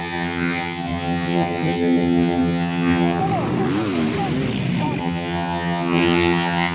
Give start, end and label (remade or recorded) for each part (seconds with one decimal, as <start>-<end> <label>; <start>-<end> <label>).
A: 0.0-3.2 remade; 3.2-5.0 recorded; 5.0-6.7 remade